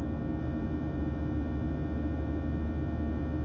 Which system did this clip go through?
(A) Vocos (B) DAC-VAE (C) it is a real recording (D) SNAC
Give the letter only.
C